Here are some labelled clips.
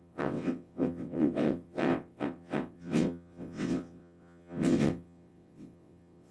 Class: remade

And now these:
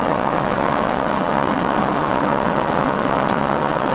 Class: remade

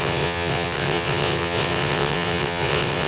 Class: remade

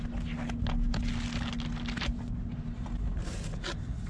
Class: recorded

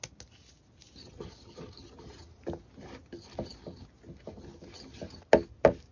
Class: recorded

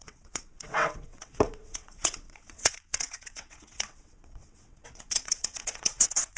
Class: remade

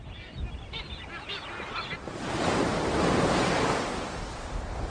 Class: recorded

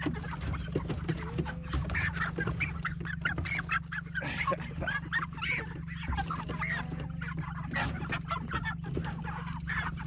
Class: recorded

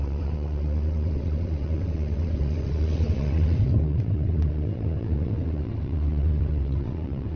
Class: remade